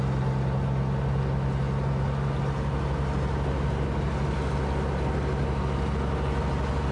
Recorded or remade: recorded